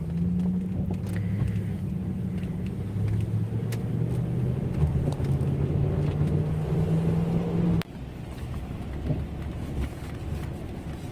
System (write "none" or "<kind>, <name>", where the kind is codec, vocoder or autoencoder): none